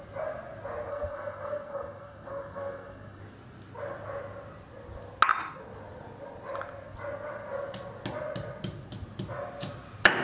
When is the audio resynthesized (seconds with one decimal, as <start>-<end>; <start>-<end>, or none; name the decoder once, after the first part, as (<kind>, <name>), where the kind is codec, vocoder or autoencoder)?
0.9-3.2 (codec, SNAC)